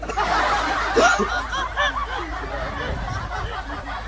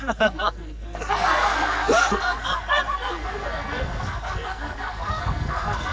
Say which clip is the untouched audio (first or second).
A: first